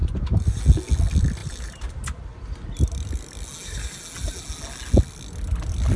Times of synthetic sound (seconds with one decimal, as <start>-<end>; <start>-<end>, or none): 0.0-0.6; 1.4-2.2